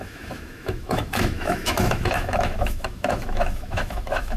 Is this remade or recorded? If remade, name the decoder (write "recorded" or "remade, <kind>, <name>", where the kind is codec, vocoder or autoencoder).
remade, autoencoder, DAC-VAE